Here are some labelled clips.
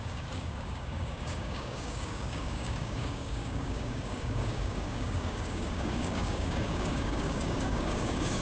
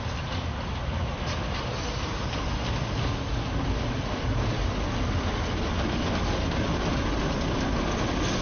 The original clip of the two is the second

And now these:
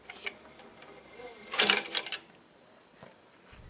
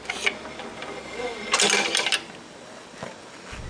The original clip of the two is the second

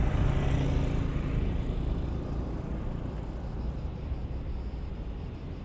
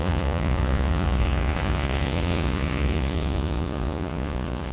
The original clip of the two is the first